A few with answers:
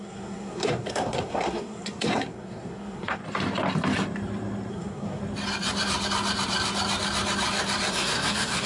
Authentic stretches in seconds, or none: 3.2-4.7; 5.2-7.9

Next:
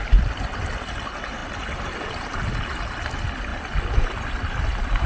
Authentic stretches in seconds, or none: 0.0-5.1

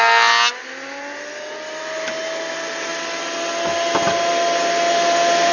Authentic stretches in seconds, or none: 0.0-5.5

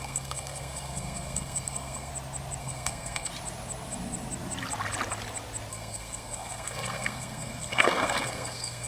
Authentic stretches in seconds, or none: 2.1-2.6; 3.3-5.7

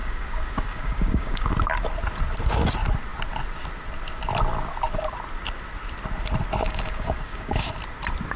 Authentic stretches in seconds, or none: 1.5-6.6; 7.7-8.4